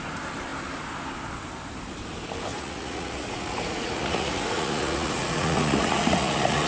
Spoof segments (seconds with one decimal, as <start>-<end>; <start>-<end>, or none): 2.5-6.7